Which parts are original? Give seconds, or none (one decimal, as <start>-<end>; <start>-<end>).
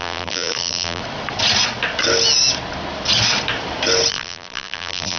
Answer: 1.0-4.1